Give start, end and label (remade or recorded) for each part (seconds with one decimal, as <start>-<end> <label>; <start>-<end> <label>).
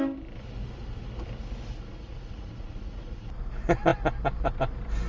0.0-1.7 recorded; 1.7-3.3 remade; 3.3-5.1 recorded